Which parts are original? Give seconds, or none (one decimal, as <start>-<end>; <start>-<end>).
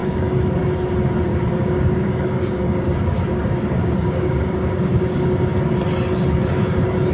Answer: 0.6-1.3; 5.6-7.1